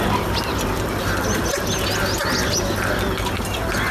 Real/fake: real